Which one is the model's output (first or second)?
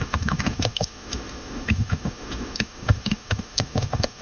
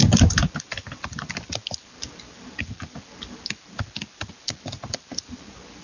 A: first